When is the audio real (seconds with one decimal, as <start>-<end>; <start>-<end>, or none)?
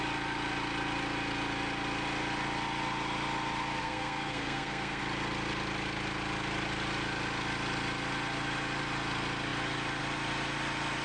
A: 0.0-3.8; 5.0-11.0